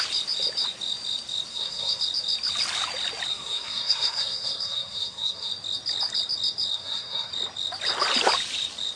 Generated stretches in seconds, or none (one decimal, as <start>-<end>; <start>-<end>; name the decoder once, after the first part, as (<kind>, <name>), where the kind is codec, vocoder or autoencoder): 1.5-2.0 (codec, SNAC); 3.3-5.5; 6.7-7.3